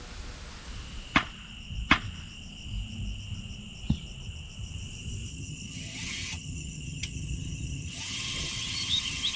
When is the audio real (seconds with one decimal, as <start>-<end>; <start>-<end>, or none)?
0.0-5.3